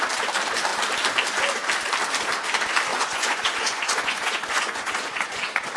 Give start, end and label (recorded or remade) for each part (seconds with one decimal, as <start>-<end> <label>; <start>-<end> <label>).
0.0-2.9 recorded; 2.9-5.8 remade